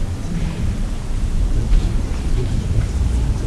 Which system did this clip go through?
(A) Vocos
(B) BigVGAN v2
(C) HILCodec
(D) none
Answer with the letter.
B